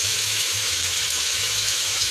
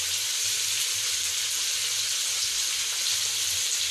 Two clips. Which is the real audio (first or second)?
second